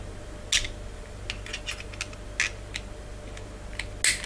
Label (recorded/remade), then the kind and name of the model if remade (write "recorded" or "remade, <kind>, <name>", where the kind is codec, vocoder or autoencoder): recorded